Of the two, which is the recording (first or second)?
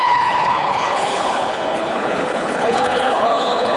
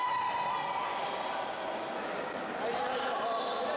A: second